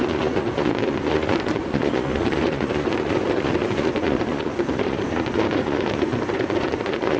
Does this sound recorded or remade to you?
remade